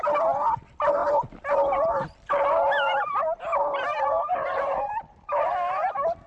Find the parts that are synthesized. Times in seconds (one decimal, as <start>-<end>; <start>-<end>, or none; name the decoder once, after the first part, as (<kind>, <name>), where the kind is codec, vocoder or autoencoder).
4.3-5.5 (vocoder, BigVGAN v2)